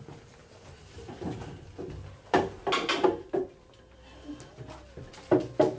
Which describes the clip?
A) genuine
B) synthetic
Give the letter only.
A